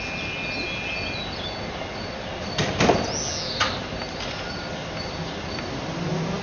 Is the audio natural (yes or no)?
yes